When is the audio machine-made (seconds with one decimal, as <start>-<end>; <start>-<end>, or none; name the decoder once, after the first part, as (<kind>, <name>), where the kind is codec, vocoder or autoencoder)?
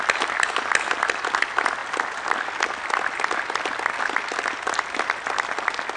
none